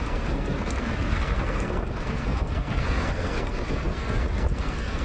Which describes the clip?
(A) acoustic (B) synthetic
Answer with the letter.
B